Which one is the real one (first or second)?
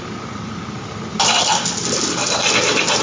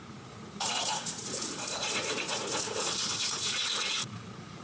first